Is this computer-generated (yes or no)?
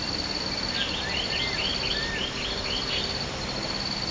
no